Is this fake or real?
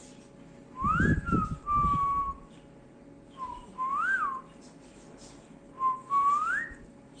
real